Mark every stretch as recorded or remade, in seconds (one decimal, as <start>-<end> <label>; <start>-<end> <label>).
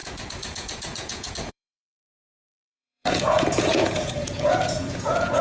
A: 0.0-5.4 remade